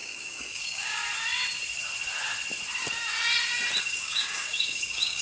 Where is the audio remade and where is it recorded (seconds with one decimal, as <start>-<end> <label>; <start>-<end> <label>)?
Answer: 0.0-1.0 remade; 1.0-3.8 recorded; 3.8-5.2 remade